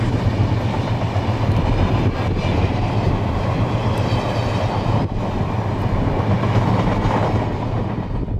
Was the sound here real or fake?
real